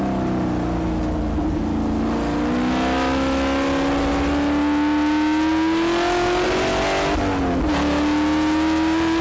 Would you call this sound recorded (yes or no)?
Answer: yes